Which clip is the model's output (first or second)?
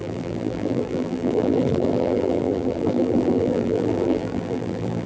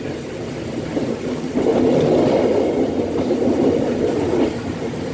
first